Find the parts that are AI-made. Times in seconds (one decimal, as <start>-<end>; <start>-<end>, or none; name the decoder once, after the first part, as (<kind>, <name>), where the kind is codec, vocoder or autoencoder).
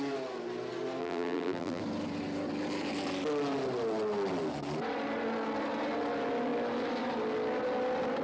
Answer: 1.0-1.8 (vocoder, BigVGAN v2)